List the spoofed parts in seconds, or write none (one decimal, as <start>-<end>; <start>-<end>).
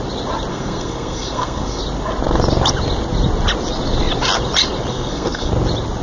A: 0.5-1.8; 4.9-5.5